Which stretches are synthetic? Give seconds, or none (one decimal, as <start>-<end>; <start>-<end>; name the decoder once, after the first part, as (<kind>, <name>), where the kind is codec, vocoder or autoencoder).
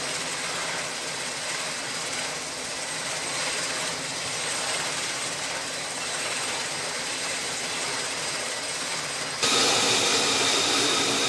3.4-8.5 (vocoder, BigVGAN v2)